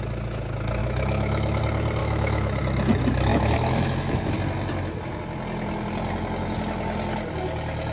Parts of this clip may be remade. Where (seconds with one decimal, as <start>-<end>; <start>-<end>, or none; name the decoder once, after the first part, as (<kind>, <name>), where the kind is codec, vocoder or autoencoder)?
0.8-1.6 (autoencoder, DAC-VAE); 2.0-2.6; 3.3-4.3